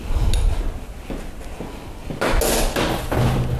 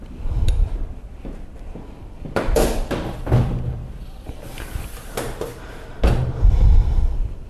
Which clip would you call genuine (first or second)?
first